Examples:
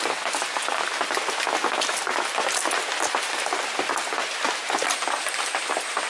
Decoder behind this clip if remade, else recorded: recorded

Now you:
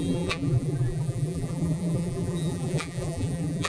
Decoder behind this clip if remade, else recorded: remade, vocoder, BigVGAN v2